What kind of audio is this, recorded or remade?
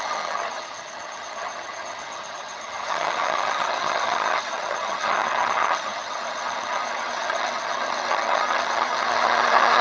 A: remade